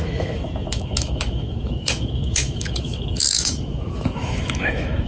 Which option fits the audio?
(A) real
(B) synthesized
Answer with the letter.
B